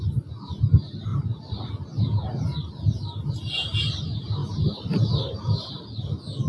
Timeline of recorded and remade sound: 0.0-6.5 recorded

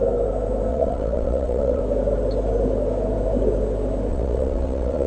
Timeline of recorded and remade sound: 0.0-0.7 recorded; 0.7-1.8 remade; 1.8-4.1 recorded; 4.1-5.1 remade

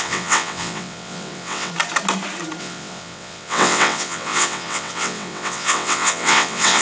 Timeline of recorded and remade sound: 0.0-1.7 remade; 1.7-2.6 recorded; 2.6-6.8 remade

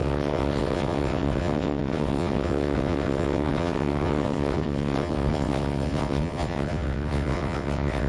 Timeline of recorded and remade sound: 0.0-8.1 remade

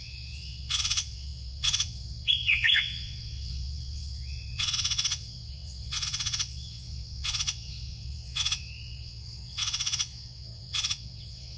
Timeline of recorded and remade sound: 0.0-11.6 remade

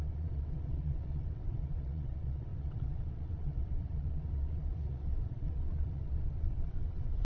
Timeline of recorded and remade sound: 0.0-7.2 remade

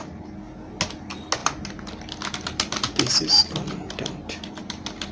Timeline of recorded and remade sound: 0.0-5.1 recorded